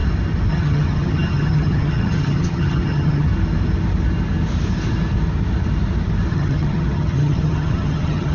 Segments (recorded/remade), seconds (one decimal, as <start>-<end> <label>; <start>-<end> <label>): 0.0-0.5 recorded; 0.5-3.3 remade; 3.3-6.3 recorded; 6.3-8.3 remade